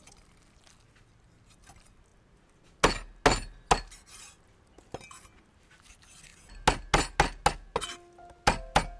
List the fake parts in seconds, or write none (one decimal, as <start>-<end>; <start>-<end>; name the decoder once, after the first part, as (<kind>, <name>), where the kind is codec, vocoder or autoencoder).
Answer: none